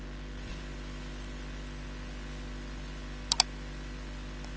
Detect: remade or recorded recorded